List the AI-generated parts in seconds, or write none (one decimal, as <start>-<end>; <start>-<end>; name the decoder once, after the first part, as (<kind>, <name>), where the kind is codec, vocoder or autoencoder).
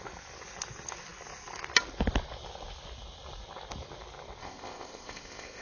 4.4-5.6 (codec, ZipCodec)